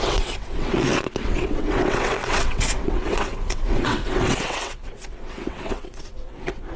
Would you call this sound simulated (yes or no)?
yes